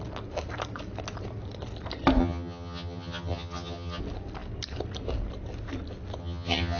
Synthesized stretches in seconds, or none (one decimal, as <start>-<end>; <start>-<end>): 2.2-4.0; 6.2-6.8